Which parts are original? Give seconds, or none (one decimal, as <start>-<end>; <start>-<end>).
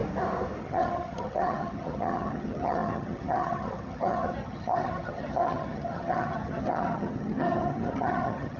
0.0-0.6